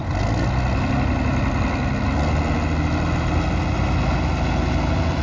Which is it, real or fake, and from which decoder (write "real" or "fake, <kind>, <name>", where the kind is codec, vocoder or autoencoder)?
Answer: real